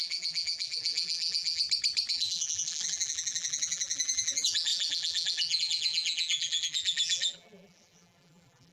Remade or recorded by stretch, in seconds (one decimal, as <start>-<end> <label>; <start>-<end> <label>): 0.0-1.6 remade; 1.6-2.1 recorded; 2.1-8.7 remade